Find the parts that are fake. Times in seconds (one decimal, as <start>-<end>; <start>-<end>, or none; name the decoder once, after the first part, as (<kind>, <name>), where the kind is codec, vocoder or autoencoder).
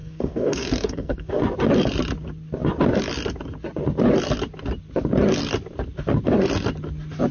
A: 0.0-1.4 (codec, SNAC)